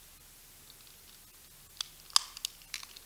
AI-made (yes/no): no